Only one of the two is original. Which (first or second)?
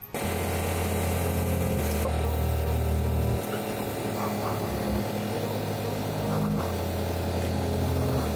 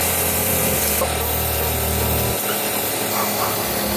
first